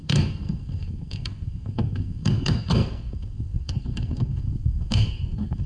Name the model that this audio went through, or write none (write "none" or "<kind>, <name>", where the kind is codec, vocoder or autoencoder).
codec, SNAC